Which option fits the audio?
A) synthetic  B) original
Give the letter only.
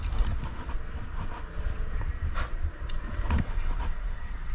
B